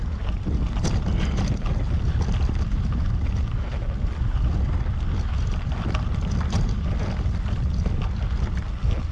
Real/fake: real